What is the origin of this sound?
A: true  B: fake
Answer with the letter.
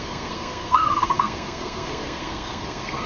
B